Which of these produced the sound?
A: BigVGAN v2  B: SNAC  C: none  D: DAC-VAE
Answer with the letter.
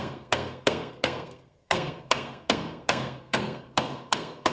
B